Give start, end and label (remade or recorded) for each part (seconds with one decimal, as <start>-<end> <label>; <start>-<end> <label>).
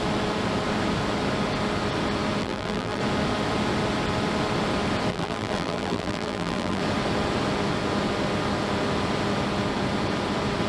0.0-2.4 recorded; 2.4-3.0 remade; 3.0-5.1 recorded; 5.1-6.8 remade; 6.8-10.7 recorded